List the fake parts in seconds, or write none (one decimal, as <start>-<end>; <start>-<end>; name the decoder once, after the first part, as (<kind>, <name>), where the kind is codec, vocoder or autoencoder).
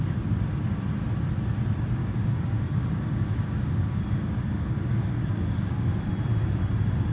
2.0-6.1 (codec, DAC)